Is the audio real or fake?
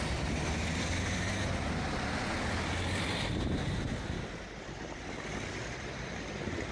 real